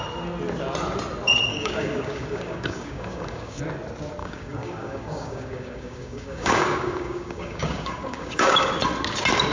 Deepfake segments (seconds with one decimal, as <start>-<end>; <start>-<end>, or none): 1.5-3.6; 4.2-8.7